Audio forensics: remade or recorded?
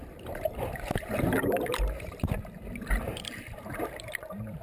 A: remade